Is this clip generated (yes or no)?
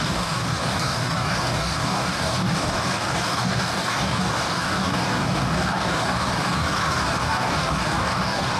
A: yes